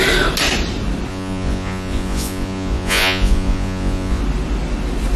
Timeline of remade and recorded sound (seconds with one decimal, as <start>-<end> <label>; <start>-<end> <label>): 0.0-1.1 recorded; 1.1-4.2 remade; 4.2-5.2 recorded